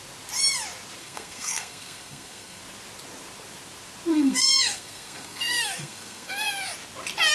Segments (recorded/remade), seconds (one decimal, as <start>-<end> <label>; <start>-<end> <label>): 0.0-1.0 recorded; 1.0-2.6 remade; 2.6-4.1 recorded; 4.1-6.5 remade; 6.5-7.3 recorded